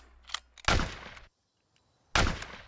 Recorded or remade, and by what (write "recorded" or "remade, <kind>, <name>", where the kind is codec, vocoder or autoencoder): recorded